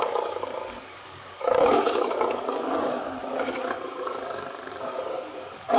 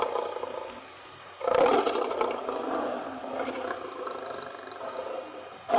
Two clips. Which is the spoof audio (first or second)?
first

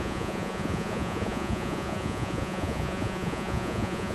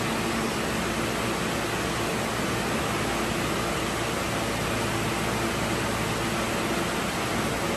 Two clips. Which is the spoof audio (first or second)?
first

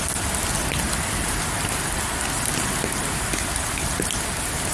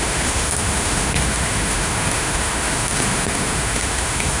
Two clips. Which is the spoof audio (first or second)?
second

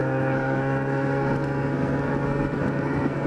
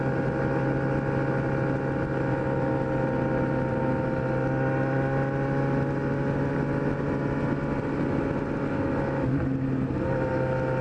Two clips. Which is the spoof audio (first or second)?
first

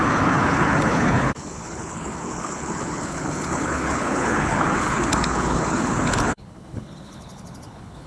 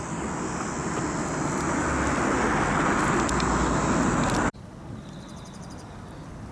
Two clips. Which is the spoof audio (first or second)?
first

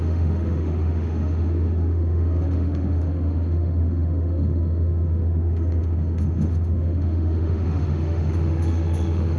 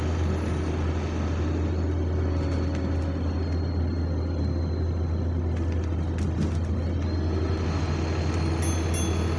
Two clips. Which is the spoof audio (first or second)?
first